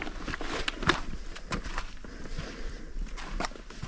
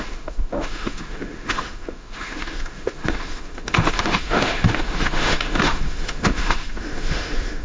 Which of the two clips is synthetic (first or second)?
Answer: second